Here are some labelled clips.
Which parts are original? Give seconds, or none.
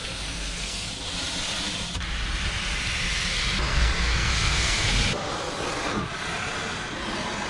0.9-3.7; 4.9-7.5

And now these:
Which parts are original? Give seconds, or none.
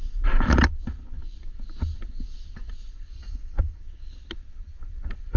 0.0-3.1; 3.8-5.4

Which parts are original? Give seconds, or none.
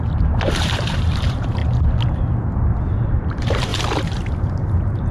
1.6-2.9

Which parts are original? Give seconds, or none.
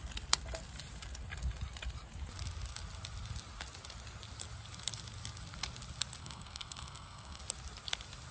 0.0-6.2; 7.4-8.3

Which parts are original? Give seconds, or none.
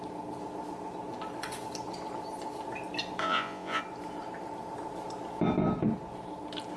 0.0-3.2; 3.8-6.8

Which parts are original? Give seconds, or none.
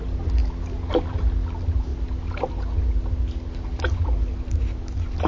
0.0-5.3